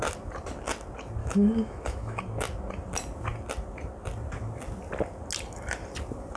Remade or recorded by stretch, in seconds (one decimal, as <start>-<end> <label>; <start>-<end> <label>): 0.0-1.2 recorded; 1.2-2.2 remade; 2.2-6.4 recorded